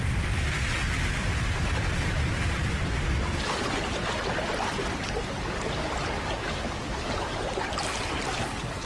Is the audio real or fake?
real